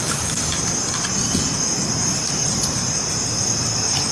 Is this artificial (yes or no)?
no